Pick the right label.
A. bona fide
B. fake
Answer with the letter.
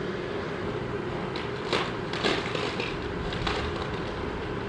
B